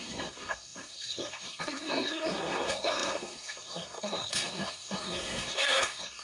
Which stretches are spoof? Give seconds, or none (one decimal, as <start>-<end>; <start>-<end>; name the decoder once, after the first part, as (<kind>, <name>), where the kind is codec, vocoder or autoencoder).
0.0-6.2 (codec, SNAC)